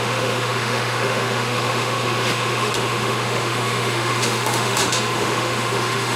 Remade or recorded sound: remade